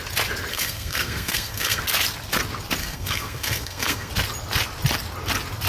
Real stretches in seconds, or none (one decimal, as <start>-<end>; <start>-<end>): 0.0-0.5; 1.8-2.8; 4.1-5.7